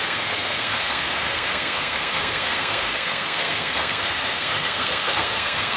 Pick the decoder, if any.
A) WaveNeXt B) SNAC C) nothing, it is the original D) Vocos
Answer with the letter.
B